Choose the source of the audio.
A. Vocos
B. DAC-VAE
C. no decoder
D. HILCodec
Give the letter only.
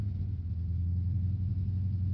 C